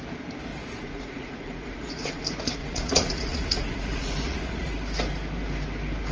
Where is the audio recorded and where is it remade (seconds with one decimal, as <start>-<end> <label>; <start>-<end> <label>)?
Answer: 0.0-0.5 recorded; 0.5-2.2 remade; 2.2-2.6 recorded; 2.6-4.7 remade; 4.7-6.1 recorded